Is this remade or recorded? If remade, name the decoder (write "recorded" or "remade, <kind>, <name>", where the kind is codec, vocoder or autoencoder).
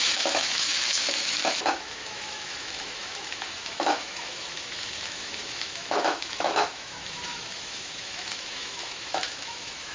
remade, autoencoder, DAC-VAE